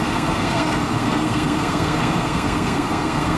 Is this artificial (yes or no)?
yes